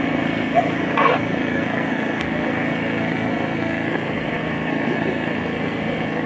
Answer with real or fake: fake